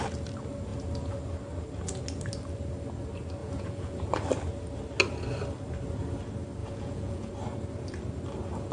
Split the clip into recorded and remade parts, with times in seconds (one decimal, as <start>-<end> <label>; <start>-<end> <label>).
0.0-3.4 recorded; 3.4-4.0 remade; 4.0-6.6 recorded; 6.6-7.3 remade; 7.3-8.7 recorded